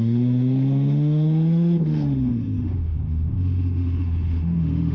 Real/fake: fake